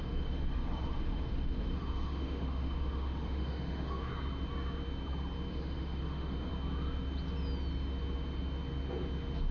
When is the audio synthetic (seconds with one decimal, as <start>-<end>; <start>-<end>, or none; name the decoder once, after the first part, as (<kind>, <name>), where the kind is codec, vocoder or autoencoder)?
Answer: 0.0-4.1 (autoencoder, DAC-VAE); 5.5-6.5